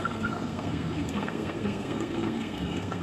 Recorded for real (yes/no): no